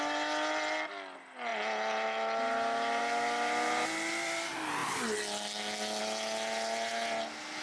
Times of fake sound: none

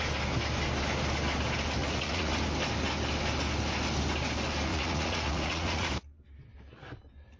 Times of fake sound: 1.8-2.3 (vocoder, Vocos); 4.7-5.9

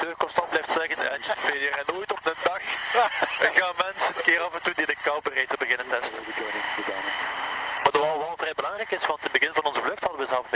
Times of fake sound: 7.8-8.8 (vocoder, Vocos)

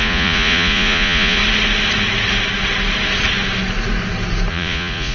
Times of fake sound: 0.0-1.4 (vocoder, Vocos); 4.5-5.1

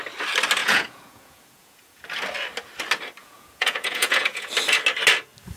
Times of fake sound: 0.6-2.0 (vocoder, Vocos); 3.2-4.5

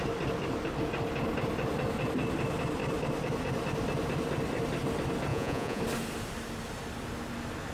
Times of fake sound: 5.3-5.8 (vocoder, Vocos)